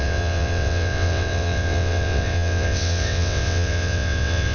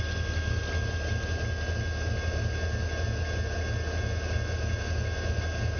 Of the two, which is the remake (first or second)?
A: first